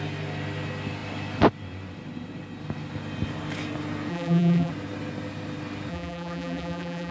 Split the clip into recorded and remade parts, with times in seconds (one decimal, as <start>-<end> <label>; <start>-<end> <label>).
0.0-4.1 recorded; 4.1-4.7 remade; 4.7-5.9 recorded; 5.9-7.1 remade